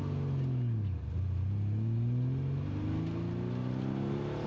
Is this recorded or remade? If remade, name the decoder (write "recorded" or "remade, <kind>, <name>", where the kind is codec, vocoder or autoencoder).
recorded